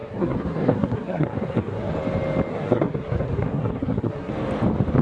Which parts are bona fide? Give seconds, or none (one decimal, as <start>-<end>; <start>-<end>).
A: 1.9-2.5; 4.3-5.0